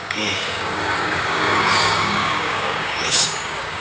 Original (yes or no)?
no